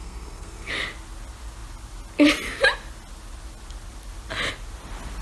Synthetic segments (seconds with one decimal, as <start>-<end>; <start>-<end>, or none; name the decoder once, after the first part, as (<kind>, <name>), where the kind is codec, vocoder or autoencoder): 0.0-0.7 (codec, SNAC)